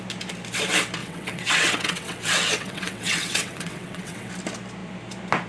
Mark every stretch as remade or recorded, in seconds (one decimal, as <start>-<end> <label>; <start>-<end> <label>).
0.0-1.0 recorded; 1.0-4.3 remade; 4.3-5.5 recorded